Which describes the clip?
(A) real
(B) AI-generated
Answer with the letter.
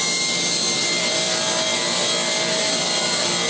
A